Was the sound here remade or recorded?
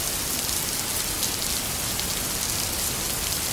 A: recorded